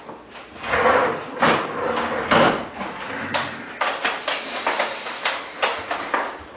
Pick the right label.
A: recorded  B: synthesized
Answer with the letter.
A